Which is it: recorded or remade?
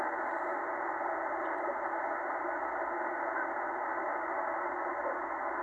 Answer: recorded